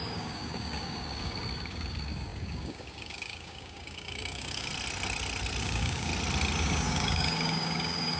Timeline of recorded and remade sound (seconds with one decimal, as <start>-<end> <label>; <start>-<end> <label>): 0.0-4.7 remade; 4.7-5.6 recorded; 5.6-6.1 remade; 6.1-6.6 recorded; 6.6-8.2 remade